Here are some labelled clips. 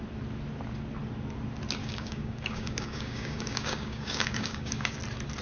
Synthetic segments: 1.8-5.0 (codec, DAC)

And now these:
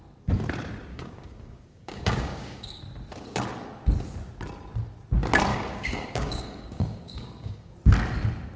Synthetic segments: 0.9-2.8 (codec, DAC); 5.5-7.7

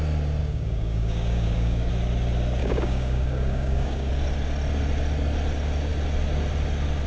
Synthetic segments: 0.4-1.9 (codec, DAC); 2.6-4.1

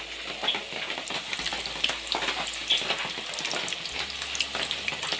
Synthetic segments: none